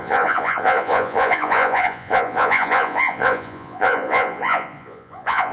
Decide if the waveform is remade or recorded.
remade